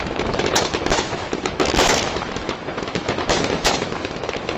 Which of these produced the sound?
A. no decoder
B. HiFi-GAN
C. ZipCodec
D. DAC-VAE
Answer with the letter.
D